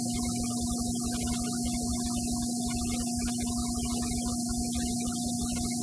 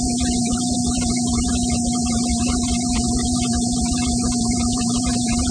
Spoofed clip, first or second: second